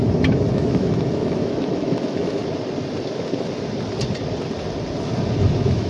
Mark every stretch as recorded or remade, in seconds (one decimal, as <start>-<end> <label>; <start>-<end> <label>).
0.0-2.4 remade; 2.4-5.5 recorded; 5.5-5.9 remade